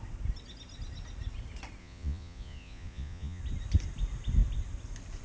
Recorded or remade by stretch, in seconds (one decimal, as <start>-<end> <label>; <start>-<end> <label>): 0.0-1.8 recorded; 1.8-3.4 remade; 3.4-5.2 recorded